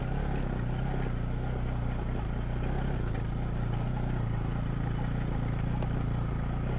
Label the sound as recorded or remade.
recorded